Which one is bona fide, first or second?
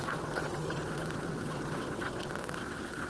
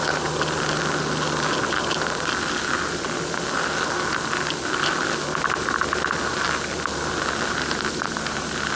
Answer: second